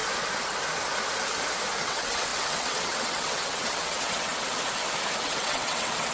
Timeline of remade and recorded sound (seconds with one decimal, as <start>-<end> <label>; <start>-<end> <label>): 0.0-1.8 recorded; 1.8-4.3 remade; 4.3-5.2 recorded; 5.2-6.1 remade